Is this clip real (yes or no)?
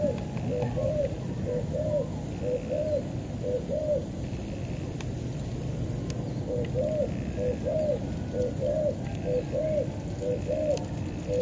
yes